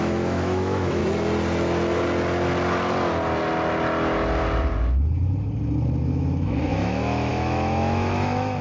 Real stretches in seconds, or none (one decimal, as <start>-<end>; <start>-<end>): 1.0-6.1